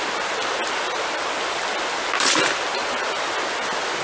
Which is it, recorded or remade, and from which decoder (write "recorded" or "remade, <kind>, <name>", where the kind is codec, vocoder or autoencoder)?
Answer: recorded